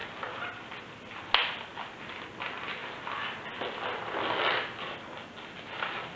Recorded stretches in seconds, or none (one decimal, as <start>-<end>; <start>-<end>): 0.0-6.2